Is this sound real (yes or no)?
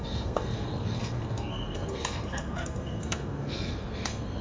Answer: no